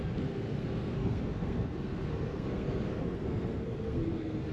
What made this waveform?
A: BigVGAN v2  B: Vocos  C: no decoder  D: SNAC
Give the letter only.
D